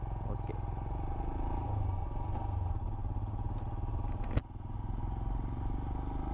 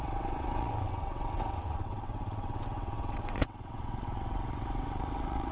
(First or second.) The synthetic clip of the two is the second